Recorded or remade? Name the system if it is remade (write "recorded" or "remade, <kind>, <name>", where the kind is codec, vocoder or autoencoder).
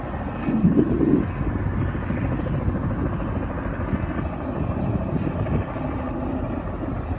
recorded